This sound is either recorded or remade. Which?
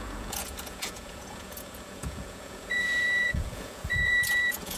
remade